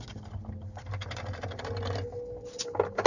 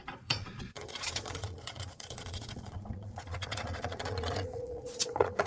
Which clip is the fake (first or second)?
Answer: second